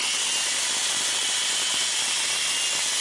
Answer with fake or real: real